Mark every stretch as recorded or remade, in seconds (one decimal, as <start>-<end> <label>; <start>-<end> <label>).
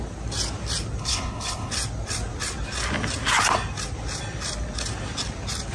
0.0-1.0 recorded; 1.0-1.7 remade; 1.7-5.7 recorded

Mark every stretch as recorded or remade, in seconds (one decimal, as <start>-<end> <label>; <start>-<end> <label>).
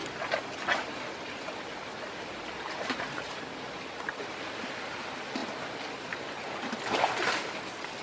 0.0-8.0 recorded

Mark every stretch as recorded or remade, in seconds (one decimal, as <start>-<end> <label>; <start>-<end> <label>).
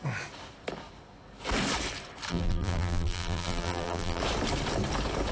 0.0-2.3 recorded; 2.3-4.2 remade; 4.2-5.3 recorded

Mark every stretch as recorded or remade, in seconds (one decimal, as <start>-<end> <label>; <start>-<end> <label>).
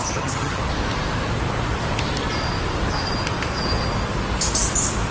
0.0-0.6 remade; 0.6-5.1 recorded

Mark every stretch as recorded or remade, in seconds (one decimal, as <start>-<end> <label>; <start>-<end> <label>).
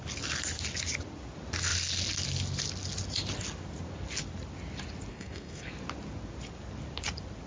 0.0-5.1 recorded; 5.1-5.7 remade; 5.7-7.5 recorded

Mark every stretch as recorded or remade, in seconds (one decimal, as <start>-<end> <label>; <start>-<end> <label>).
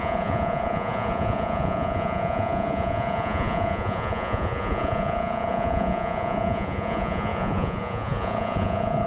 0.0-9.1 remade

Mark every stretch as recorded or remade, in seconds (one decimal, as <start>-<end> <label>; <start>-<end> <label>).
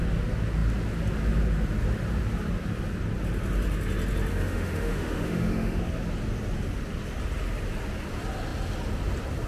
0.0-4.3 recorded; 4.3-5.8 remade; 5.8-9.5 recorded